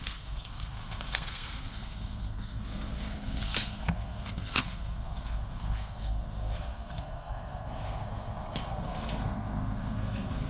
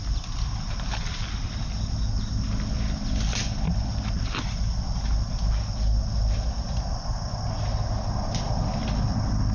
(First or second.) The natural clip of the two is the second